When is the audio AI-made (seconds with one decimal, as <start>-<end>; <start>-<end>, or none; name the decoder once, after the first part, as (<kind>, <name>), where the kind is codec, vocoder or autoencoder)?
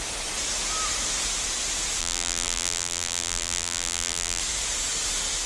2.0-4.4 (vocoder, BigVGAN v2)